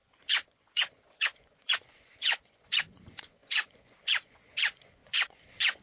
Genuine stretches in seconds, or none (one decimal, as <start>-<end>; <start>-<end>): none